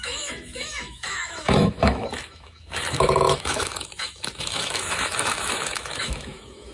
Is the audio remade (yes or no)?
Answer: yes